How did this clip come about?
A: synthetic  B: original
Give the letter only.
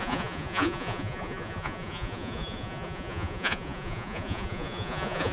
A